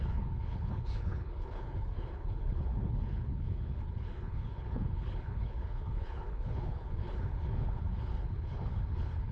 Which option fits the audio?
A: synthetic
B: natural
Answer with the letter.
A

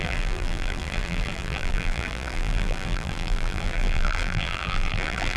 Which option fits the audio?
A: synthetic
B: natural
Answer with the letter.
A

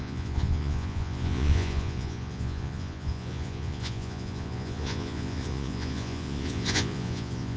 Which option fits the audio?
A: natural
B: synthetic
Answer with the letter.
B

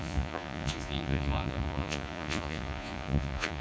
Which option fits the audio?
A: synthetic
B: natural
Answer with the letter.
A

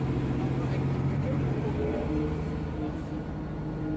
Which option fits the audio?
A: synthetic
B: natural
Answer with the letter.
B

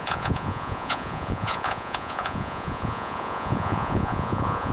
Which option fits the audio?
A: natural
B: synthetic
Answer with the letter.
B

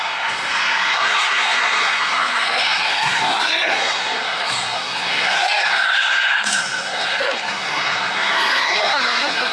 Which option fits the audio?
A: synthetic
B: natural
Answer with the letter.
A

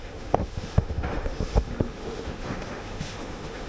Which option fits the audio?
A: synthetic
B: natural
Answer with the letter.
A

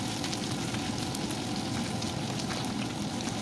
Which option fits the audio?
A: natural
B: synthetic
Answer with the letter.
A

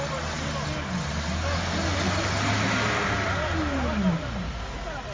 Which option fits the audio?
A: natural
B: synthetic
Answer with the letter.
A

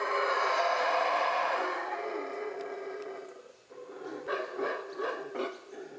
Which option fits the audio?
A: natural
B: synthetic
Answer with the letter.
A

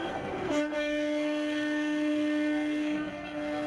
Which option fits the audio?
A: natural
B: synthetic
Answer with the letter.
B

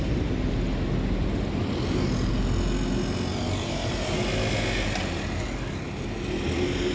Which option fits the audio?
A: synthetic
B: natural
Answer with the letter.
B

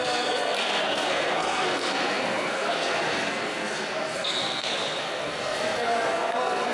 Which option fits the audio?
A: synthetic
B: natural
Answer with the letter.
A